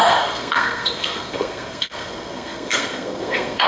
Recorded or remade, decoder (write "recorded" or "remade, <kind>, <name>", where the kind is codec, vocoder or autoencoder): remade, codec, SNAC